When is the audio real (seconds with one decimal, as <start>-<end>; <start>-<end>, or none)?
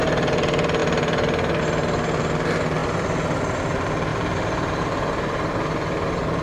0.0-0.8; 1.6-2.8; 3.4-4.1; 4.8-6.4